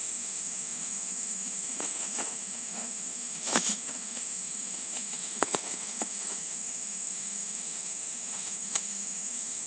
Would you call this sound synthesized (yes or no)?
yes